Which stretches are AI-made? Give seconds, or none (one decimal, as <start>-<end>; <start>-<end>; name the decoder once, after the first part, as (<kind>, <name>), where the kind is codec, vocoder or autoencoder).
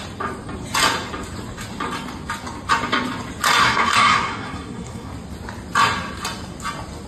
3.6-5.1 (codec, SNAC)